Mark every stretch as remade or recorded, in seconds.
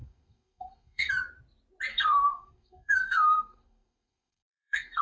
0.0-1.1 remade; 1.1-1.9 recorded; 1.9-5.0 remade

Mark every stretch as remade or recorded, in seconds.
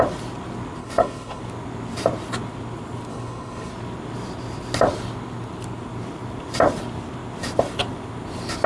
0.0-0.8 recorded; 0.8-1.4 remade; 1.4-3.1 recorded; 3.1-3.7 remade; 3.7-8.7 recorded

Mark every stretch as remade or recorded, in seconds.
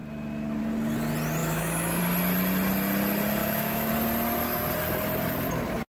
0.0-1.4 recorded; 1.4-2.0 remade; 2.0-3.4 recorded; 3.4-3.9 remade; 3.9-5.9 recorded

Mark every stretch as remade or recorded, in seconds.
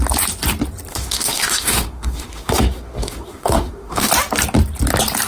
0.0-0.9 recorded; 0.9-4.1 remade; 4.1-5.3 recorded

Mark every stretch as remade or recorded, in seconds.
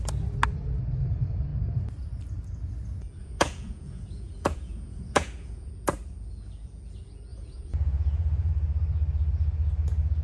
0.0-3.2 recorded; 3.2-5.7 remade; 5.7-7.3 recorded; 7.3-8.5 remade; 8.5-10.2 recorded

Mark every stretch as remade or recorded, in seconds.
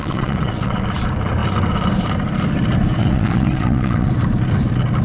0.0-0.8 remade; 0.8-3.0 recorded; 3.0-4.1 remade; 4.1-5.0 recorded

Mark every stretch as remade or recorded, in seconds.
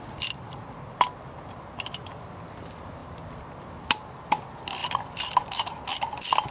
0.0-6.5 recorded